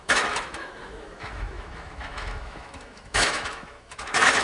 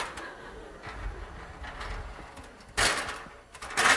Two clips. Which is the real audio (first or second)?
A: second